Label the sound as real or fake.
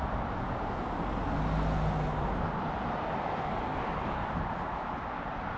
real